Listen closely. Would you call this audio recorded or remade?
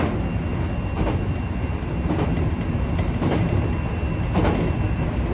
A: recorded